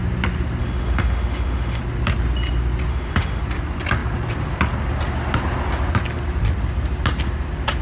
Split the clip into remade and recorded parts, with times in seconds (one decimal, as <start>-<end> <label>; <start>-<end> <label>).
0.0-0.6 recorded; 0.6-1.8 remade; 1.8-2.9 recorded; 2.9-3.4 remade; 3.4-7.8 recorded